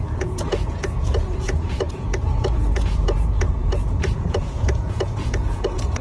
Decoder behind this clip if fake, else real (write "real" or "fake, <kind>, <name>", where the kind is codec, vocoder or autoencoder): fake, vocoder, Vocos